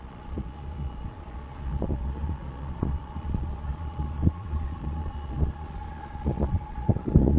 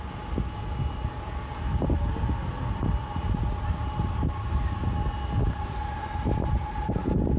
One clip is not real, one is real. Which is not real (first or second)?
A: first